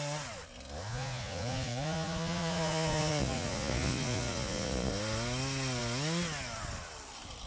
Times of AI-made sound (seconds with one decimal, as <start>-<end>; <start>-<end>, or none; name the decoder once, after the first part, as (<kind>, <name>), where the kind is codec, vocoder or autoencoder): 0.9-4.9 (vocoder, Vocos)